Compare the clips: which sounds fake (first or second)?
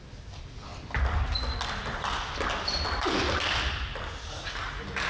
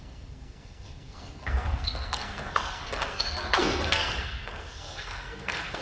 second